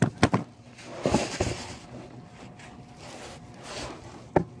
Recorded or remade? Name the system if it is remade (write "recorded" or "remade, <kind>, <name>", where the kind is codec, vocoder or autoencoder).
recorded